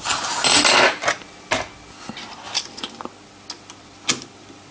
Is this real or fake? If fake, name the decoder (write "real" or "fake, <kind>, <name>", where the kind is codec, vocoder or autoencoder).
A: real